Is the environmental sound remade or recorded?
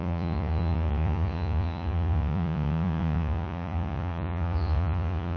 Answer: remade